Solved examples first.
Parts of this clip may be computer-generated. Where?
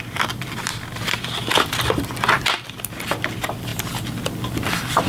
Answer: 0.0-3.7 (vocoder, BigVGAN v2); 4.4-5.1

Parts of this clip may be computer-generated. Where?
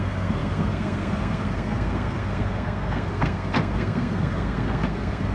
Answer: 0.0-5.3 (codec, SNAC)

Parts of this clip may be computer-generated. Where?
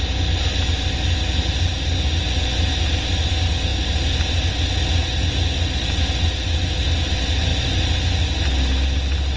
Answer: none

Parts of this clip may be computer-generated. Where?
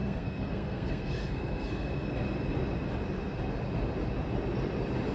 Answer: 0.0-2.1 (codec, SNAC)